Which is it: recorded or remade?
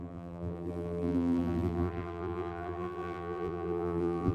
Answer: remade